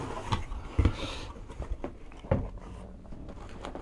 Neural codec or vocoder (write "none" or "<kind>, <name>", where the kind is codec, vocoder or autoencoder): none